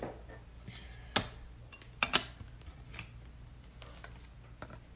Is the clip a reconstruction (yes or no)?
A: no